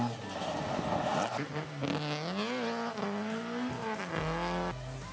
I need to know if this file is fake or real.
real